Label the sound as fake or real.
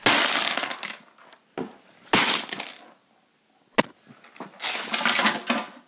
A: real